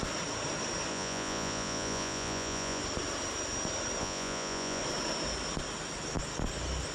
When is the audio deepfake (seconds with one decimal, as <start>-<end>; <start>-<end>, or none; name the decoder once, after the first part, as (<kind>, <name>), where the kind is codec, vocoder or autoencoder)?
0.9-2.8 (vocoder, Vocos); 4.0-4.8